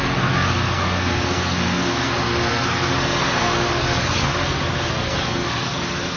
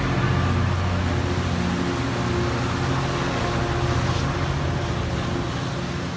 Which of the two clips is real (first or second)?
second